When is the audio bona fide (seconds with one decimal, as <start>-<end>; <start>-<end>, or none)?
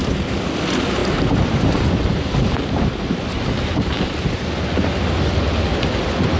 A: 0.0-1.0; 4.5-6.4